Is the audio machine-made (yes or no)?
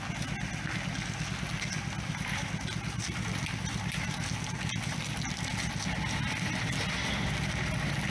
no